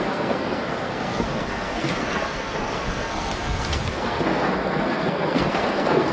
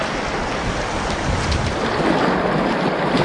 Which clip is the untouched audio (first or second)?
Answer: second